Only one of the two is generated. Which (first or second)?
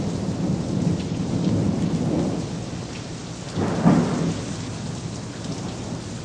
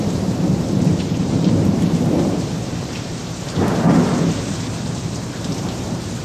second